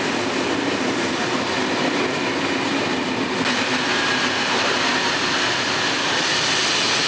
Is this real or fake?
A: real